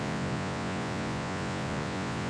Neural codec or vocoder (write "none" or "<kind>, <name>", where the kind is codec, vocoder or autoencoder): vocoder, Vocos